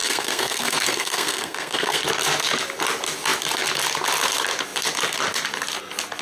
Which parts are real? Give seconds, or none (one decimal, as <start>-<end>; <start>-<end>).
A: 2.0-6.2